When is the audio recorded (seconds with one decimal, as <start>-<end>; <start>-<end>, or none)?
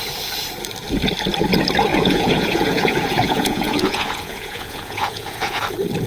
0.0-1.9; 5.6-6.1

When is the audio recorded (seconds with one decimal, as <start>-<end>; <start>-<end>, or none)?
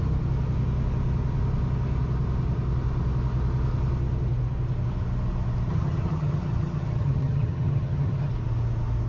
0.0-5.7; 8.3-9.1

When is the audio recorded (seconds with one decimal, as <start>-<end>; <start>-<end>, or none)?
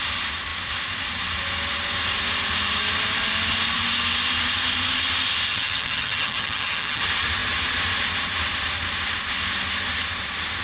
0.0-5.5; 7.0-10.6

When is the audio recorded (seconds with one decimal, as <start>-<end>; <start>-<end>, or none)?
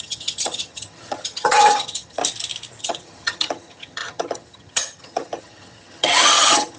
2.2-2.8